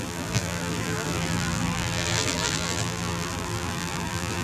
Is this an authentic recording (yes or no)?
no